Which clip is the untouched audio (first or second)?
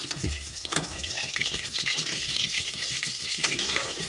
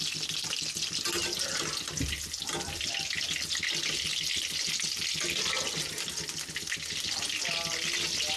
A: second